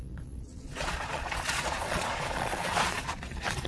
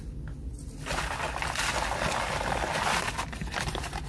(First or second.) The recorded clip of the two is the second